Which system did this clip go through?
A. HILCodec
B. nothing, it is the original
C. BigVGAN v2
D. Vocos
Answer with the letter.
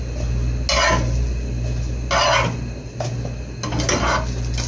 B